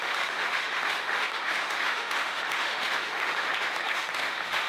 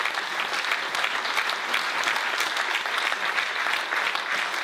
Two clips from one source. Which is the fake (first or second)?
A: first